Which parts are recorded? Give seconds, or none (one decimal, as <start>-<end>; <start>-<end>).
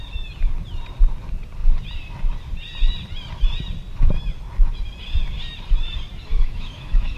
0.0-6.3